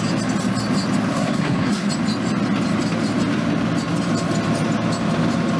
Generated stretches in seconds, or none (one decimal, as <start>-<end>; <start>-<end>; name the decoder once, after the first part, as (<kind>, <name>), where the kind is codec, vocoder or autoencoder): 1.1-1.9 (codec, SNAC)